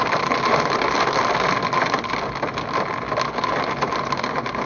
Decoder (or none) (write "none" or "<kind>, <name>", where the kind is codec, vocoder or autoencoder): none